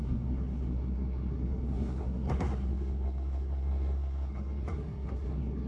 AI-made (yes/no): yes